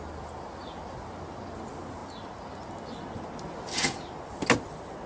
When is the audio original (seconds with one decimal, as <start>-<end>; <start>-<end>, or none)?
0.0-5.1